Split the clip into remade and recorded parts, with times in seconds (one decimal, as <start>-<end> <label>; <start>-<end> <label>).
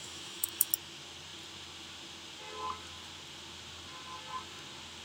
0.0-0.7 remade; 0.7-5.0 recorded